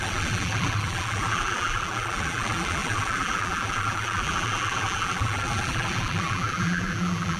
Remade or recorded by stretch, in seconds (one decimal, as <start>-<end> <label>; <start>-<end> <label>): 0.0-7.4 remade